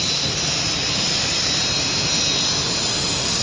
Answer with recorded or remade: recorded